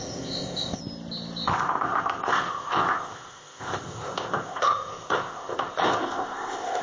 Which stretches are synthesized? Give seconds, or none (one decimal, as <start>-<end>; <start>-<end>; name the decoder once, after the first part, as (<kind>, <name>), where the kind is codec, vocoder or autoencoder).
0.0-0.8 (codec, ZipCodec); 1.5-6.8